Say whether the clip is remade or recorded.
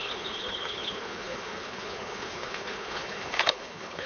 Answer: remade